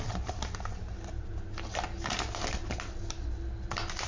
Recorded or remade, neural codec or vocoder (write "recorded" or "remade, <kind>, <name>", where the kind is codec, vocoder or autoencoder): recorded